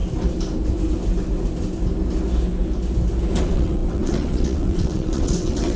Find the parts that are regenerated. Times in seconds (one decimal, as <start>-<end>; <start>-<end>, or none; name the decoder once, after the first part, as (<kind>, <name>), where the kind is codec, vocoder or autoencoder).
3.4-5.8 (vocoder, WaveNeXt)